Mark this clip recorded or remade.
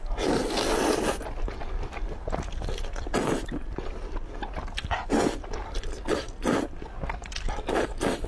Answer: recorded